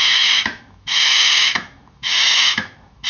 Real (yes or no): no